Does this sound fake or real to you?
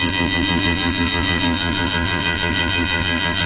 fake